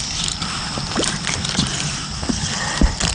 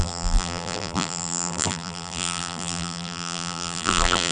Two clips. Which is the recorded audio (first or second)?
first